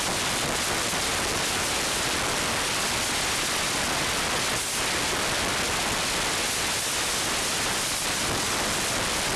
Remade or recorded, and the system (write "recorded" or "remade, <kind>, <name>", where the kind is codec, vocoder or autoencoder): recorded